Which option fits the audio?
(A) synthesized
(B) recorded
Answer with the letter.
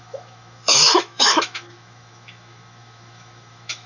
A